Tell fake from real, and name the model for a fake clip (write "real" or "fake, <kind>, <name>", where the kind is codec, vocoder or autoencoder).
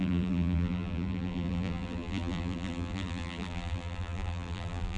fake, vocoder, BigVGAN v2